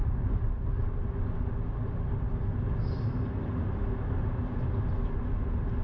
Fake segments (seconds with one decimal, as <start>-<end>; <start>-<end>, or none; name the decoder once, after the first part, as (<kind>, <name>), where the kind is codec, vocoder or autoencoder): none